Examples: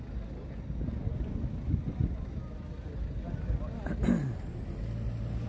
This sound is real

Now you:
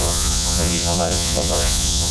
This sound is fake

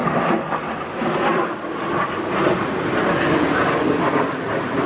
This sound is real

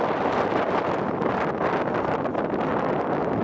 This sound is real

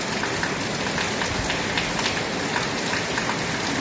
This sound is real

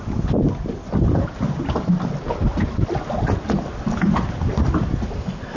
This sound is real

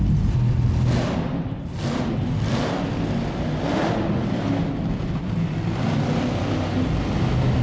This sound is real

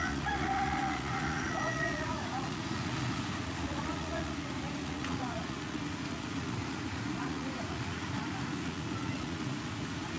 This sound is fake